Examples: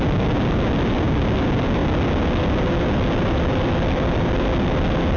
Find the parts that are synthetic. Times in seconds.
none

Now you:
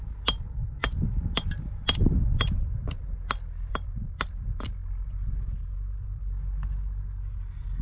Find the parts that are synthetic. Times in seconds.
none

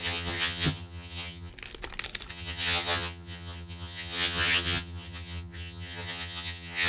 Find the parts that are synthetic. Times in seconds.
0.0-1.5 (vocoder, HiFi-GAN); 2.3-6.9

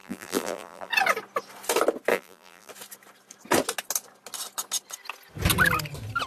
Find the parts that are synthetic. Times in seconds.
0.0-0.9 (vocoder, BigVGAN v2); 2.1-2.7

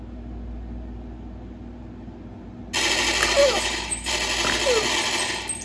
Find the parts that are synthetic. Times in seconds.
3.4-4.1 (autoencoder, DAC-VAE)

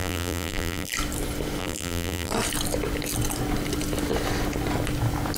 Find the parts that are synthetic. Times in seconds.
0.0-0.9 (vocoder, BigVGAN v2); 1.6-2.3

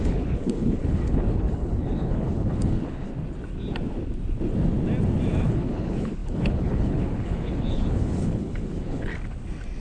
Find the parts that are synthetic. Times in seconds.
0.0-3.1 (codec, HILCodec); 5.5-9.1